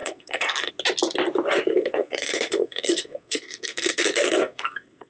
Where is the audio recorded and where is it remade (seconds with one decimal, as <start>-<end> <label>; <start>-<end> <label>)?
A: 0.0-0.7 remade; 0.7-1.7 recorded; 1.7-5.1 remade